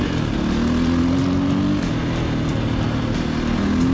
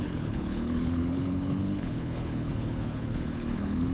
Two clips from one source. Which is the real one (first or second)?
first